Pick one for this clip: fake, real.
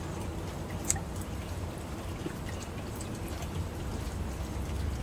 fake